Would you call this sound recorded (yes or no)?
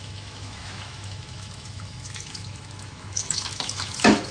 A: no